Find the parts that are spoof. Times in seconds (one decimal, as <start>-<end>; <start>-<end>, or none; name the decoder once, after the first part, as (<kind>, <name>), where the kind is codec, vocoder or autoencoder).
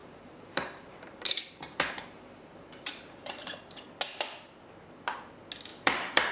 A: 0.0-3.8 (vocoder, BigVGAN v2); 5.7-6.3